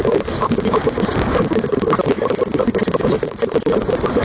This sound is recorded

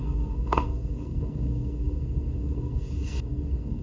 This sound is remade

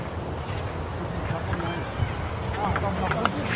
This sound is recorded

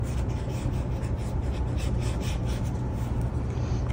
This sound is recorded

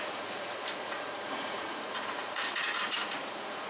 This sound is remade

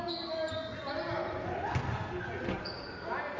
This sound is recorded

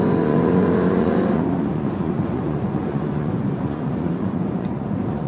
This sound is remade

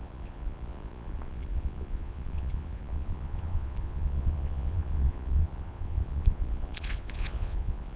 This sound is remade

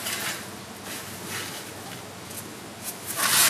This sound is recorded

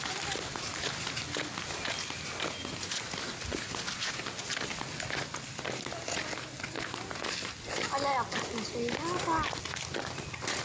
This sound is recorded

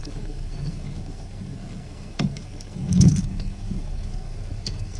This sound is remade